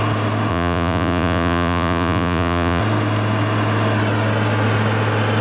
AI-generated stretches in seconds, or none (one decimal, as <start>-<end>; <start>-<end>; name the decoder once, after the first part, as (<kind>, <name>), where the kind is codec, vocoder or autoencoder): 0.5-2.8 (vocoder, Vocos)

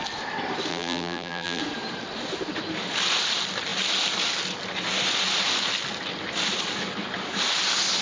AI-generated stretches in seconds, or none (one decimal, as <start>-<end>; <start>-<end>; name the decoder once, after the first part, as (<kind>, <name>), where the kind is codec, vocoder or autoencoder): 0.7-1.6 (vocoder, BigVGAN v2)

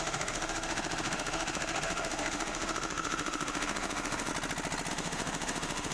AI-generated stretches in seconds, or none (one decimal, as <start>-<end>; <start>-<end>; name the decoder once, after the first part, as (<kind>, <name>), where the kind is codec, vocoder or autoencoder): 0.0-4.3 (autoencoder, DAC-VAE); 4.9-5.9

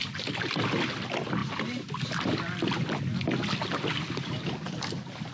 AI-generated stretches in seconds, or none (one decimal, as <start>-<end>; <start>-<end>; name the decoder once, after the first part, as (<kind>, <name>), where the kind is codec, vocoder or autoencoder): none